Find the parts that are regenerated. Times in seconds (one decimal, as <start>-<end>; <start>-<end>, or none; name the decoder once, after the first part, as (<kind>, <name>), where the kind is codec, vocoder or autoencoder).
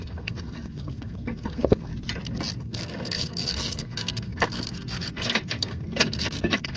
0.0-1.9 (codec, SNAC); 2.6-6.8